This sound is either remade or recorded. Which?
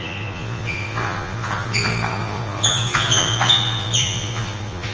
remade